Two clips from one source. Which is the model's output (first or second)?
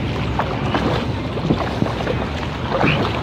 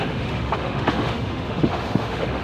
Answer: second